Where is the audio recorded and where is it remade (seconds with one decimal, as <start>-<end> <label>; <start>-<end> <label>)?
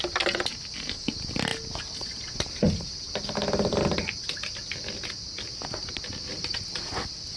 0.0-7.4 recorded